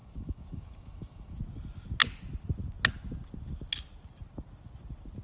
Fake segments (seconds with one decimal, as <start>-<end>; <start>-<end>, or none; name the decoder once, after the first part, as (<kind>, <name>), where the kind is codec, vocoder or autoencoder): 0.0-1.4 (autoencoder, DAC-VAE)